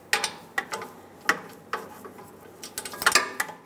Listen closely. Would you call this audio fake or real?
real